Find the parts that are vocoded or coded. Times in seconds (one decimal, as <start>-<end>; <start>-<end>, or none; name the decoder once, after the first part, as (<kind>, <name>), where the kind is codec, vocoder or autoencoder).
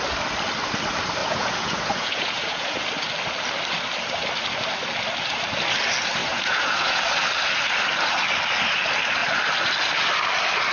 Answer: 1.2-2.8 (vocoder, Vocos); 6.2-7.0